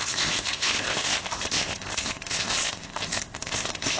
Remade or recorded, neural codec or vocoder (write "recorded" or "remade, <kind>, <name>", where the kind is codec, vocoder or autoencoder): remade, codec, ZipCodec